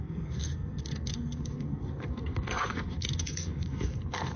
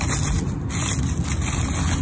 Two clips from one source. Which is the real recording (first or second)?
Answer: second